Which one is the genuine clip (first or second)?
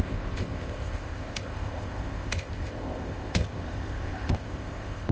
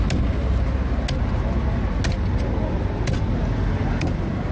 second